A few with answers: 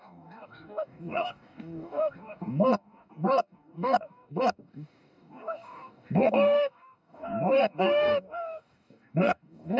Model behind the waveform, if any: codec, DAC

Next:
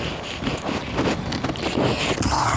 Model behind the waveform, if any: none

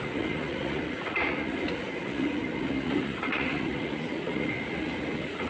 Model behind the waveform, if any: vocoder, Vocos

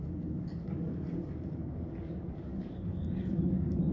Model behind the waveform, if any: codec, DAC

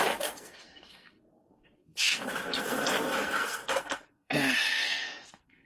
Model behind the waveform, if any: codec, SNAC